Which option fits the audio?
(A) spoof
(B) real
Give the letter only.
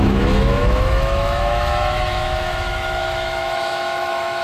A